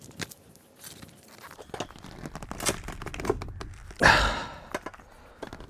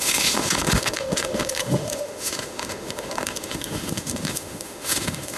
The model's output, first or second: second